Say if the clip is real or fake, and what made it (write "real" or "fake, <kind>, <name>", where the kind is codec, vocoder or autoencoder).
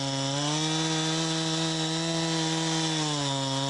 real